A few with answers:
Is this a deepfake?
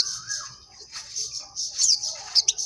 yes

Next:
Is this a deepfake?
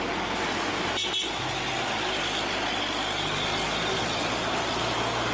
no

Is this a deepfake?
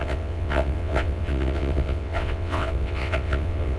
yes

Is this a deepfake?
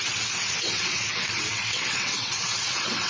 yes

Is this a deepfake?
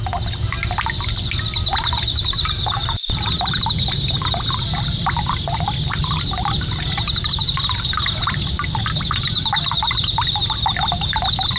no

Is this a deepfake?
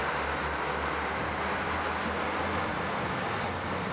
no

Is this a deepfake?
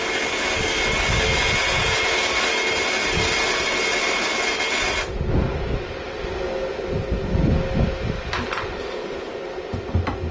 no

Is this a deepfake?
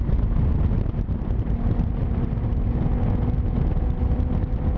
no